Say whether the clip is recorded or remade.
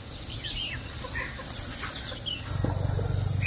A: recorded